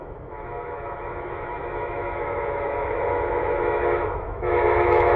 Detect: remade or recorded remade